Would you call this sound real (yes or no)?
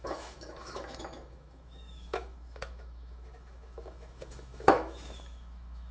no